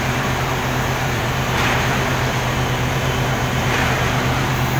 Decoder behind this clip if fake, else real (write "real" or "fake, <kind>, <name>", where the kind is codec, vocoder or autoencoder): fake, vocoder, BigVGAN v2